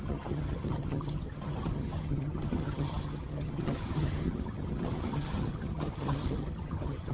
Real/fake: fake